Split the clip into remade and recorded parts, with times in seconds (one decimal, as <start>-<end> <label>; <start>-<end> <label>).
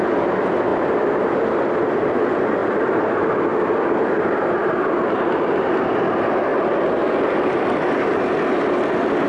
0.0-0.7 recorded; 0.7-2.0 remade; 2.0-2.6 recorded; 2.6-3.5 remade; 3.5-6.5 recorded; 6.5-7.6 remade; 7.6-9.3 recorded